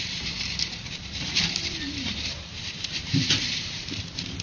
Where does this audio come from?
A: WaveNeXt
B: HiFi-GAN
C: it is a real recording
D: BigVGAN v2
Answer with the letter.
D